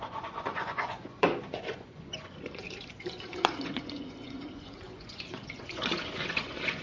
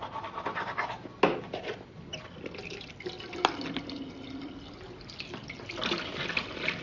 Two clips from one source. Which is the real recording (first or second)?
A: second